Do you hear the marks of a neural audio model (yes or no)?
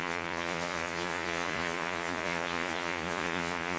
yes